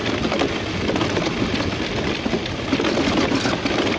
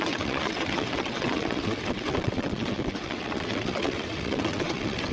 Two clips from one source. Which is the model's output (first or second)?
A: second